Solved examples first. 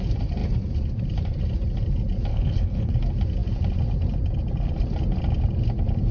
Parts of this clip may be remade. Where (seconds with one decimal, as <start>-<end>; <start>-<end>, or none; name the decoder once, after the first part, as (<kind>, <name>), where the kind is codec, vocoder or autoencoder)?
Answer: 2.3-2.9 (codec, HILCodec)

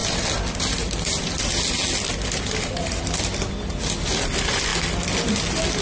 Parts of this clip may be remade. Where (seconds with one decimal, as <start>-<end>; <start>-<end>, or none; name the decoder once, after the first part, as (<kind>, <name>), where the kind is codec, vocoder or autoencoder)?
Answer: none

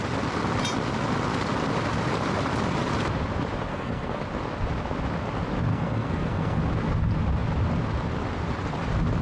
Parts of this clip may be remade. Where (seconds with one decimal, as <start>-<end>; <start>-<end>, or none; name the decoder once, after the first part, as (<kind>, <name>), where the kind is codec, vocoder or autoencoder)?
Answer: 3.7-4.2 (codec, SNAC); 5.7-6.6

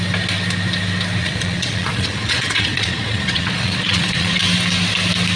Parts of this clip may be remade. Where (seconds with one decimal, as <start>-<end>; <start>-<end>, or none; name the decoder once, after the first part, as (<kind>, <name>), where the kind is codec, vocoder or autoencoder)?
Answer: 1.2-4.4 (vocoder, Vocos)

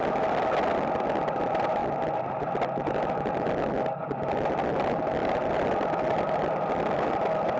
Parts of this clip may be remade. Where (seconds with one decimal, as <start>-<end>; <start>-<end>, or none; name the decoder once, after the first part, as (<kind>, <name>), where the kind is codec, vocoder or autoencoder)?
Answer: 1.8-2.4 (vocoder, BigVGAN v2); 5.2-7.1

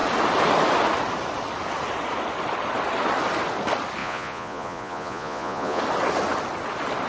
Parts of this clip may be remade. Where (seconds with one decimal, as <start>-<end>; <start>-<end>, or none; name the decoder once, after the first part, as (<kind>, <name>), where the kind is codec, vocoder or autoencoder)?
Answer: 4.0-5.8 (vocoder, Vocos)